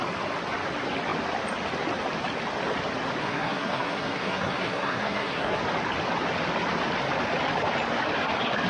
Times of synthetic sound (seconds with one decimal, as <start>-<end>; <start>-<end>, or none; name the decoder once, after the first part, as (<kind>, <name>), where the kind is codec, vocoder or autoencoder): 3.2-5.6 (codec, SNAC)